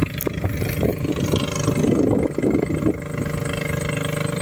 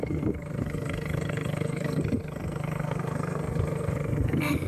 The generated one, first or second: second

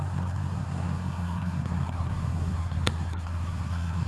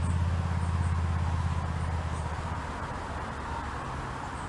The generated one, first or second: first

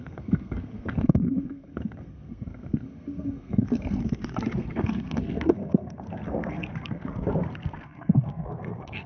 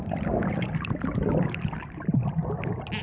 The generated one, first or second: first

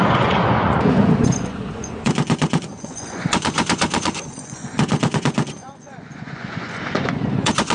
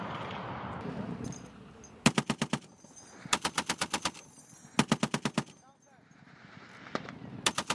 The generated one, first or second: first